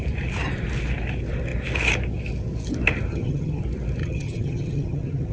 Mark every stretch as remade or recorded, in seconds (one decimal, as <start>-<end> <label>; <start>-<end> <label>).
0.0-3.1 recorded; 3.1-3.6 remade; 3.6-4.0 recorded; 4.0-5.3 remade